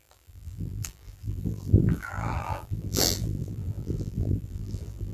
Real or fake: fake